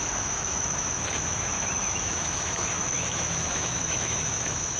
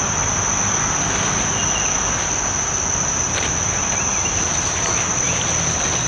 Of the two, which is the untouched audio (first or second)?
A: second